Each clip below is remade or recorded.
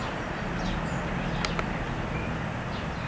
recorded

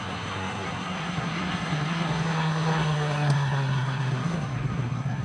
remade